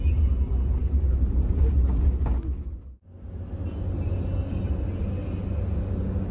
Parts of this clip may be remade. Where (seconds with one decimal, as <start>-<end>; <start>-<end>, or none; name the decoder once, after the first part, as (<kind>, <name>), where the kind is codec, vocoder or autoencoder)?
none